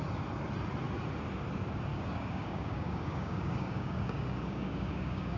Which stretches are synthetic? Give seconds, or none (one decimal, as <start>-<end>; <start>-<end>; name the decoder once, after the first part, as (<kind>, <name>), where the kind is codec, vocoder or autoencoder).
1.9-5.4 (codec, DAC)